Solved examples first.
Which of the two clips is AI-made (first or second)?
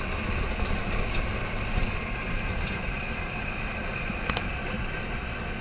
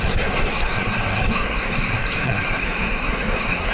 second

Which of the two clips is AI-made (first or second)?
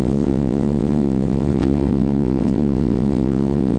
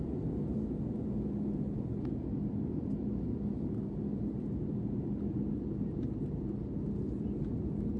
first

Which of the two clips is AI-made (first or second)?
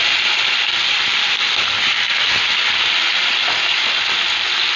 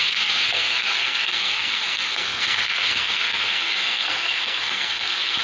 second